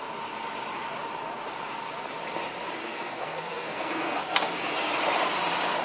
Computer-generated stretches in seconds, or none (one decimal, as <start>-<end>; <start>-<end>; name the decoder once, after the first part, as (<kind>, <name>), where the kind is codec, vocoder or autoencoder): 2.8-4.9 (codec, SNAC)